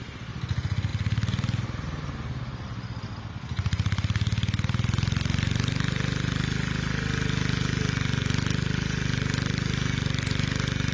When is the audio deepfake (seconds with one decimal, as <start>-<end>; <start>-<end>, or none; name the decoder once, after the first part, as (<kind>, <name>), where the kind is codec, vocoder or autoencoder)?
none